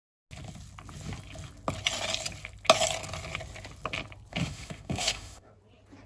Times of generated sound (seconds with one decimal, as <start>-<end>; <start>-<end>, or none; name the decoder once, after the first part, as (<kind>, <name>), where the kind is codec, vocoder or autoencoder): 4.3-5.5 (autoencoder, DAC-VAE)